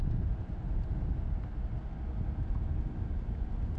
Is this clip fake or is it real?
real